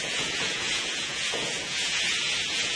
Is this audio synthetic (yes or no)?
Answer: yes